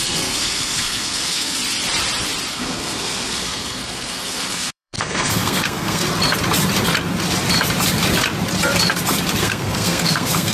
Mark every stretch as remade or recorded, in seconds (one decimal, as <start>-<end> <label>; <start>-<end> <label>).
0.0-1.6 remade; 1.6-2.5 recorded; 2.5-6.0 remade; 6.0-9.4 recorded; 9.4-10.5 remade